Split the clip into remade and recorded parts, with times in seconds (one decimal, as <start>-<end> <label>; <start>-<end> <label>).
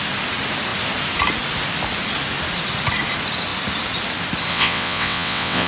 0.0-4.5 recorded; 4.5-5.7 remade